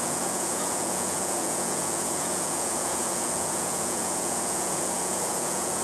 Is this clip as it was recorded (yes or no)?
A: no